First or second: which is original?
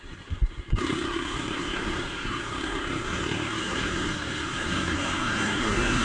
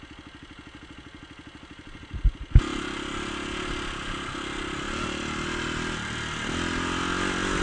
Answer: second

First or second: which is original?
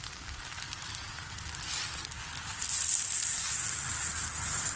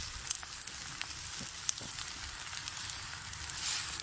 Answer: first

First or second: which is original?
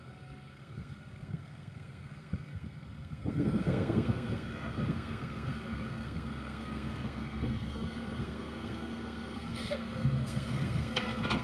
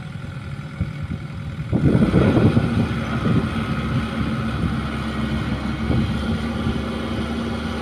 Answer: second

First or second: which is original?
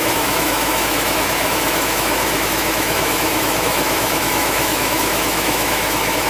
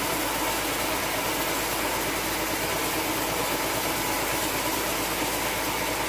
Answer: second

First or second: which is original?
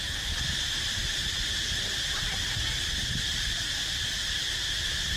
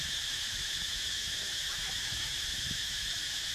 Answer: first